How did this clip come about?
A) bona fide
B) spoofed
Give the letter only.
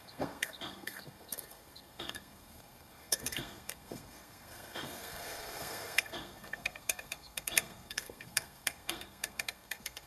B